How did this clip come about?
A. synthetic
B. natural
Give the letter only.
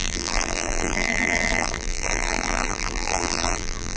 A